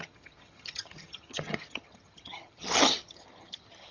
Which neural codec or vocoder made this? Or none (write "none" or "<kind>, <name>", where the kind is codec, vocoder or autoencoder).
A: vocoder, HiFi-GAN